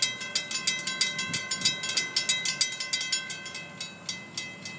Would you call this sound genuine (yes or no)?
yes